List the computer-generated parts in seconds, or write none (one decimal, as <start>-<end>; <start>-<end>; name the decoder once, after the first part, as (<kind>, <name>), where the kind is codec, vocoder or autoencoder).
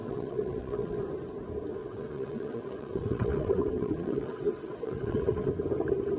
0.0-1.0 (vocoder, WaveNeXt); 1.8-5.5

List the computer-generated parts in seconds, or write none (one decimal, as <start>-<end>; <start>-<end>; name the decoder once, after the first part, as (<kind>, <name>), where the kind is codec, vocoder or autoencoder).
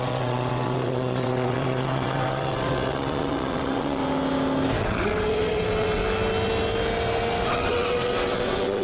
0.0-4.0 (vocoder, WaveNeXt); 4.8-6.0; 7.5-8.8